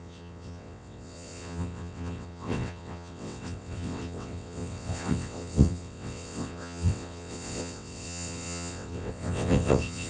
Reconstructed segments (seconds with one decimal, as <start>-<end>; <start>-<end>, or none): 0.0-10.1